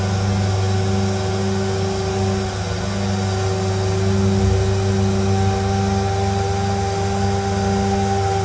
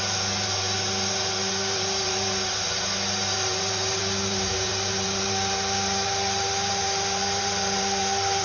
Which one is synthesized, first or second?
second